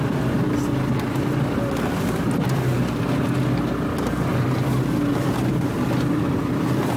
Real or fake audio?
real